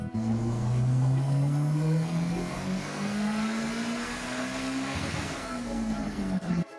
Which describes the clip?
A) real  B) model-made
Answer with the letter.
B